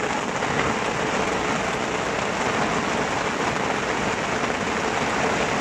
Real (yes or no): yes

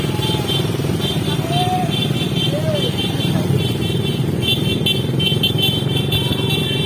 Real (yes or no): yes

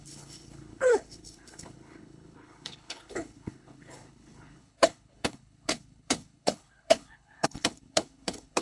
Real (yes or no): no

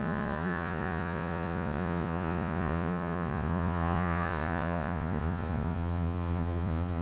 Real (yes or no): no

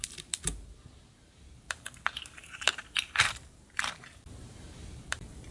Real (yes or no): no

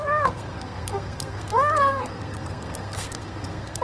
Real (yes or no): no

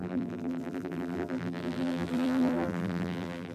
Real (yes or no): no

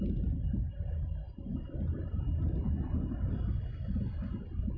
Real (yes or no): yes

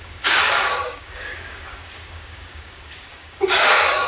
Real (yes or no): no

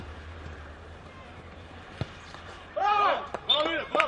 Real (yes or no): no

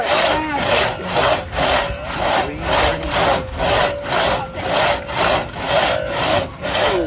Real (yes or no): yes